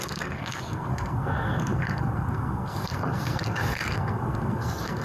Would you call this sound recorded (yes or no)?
no